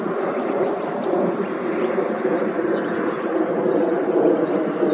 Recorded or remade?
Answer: recorded